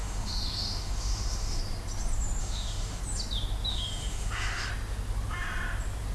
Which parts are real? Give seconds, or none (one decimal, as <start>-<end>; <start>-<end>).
1.6-2.4; 3.0-3.7; 4.7-6.1